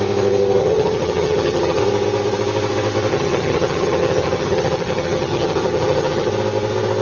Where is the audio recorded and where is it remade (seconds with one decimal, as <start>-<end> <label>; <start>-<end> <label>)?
0.0-0.6 recorded; 0.6-1.8 remade; 1.8-3.1 recorded; 3.1-6.3 remade; 6.3-7.0 recorded